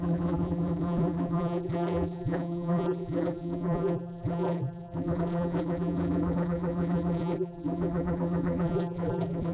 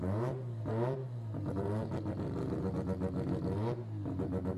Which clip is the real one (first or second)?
second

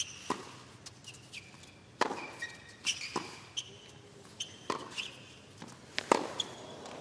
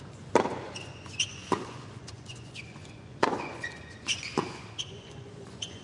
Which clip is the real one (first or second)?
first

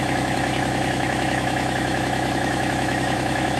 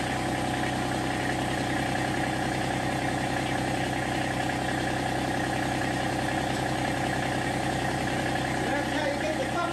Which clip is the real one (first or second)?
second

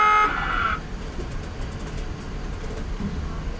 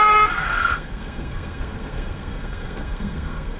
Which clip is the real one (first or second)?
first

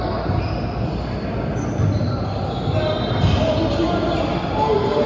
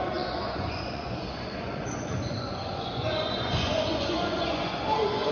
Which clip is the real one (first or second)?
first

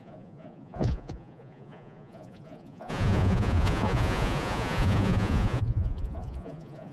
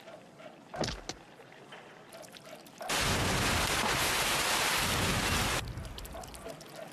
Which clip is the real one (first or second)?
second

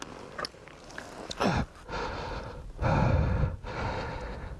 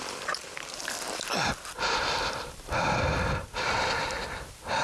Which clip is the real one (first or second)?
first